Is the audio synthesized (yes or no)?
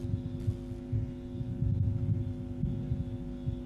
no